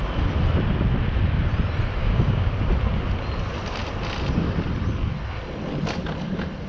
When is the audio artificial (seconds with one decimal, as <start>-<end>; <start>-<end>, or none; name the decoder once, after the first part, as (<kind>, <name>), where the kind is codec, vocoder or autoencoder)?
2.0-2.5 (codec, DAC)